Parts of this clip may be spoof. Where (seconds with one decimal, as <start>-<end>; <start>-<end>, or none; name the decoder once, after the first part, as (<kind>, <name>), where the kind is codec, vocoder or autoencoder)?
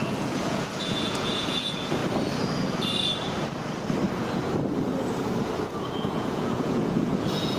0.0-2.0 (vocoder, Vocos); 5.4-7.6